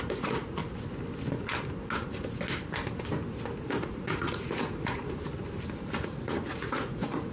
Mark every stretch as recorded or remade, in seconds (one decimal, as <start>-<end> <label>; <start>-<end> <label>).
0.0-0.6 remade; 0.6-3.6 recorded; 3.6-5.2 remade; 5.2-6.0 recorded; 6.0-7.3 remade